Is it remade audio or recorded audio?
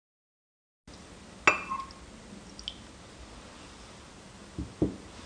recorded